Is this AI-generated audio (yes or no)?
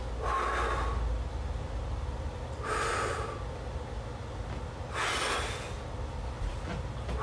no